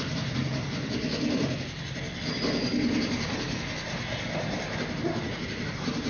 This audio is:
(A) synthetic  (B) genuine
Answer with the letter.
A